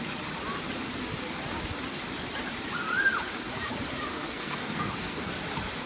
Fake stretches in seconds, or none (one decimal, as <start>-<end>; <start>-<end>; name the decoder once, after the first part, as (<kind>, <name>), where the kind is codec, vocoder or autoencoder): 4.1-5.3 (codec, SNAC)